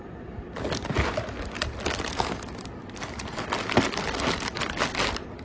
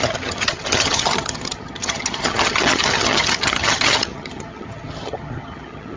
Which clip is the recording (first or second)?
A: first